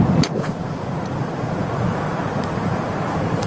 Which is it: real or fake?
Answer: fake